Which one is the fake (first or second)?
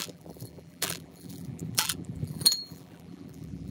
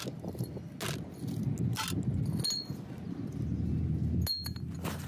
first